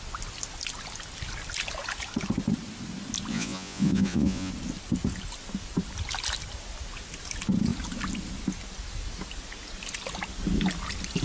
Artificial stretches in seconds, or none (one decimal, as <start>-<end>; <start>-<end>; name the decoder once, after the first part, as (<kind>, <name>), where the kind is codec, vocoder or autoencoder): 3.3-4.5 (vocoder, Vocos)